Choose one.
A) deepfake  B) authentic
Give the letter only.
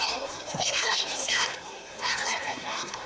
A